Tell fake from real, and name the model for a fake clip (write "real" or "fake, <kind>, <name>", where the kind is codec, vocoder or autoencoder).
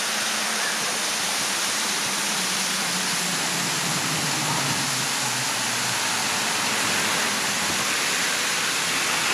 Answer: real